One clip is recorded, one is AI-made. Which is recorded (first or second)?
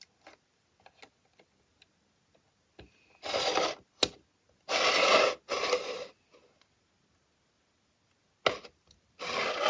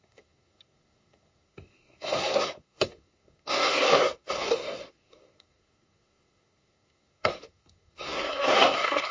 first